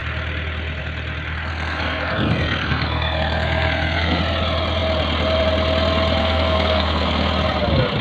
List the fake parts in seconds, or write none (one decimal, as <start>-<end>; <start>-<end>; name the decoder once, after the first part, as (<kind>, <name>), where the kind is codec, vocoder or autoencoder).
1.5-4.2 (codec, SNAC); 6.2-7.3